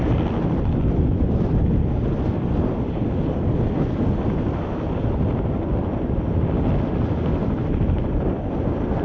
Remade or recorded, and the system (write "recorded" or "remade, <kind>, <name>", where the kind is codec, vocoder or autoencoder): recorded